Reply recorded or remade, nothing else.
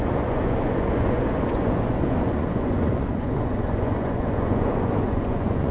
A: remade